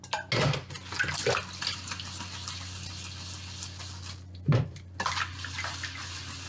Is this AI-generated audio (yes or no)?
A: no